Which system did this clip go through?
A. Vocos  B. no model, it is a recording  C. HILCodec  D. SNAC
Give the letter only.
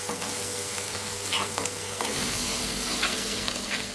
D